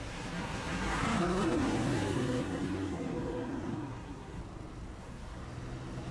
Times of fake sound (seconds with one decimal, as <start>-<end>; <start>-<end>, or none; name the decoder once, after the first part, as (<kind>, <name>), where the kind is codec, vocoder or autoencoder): 0.0-4.4 (codec, SNAC); 5.0-5.4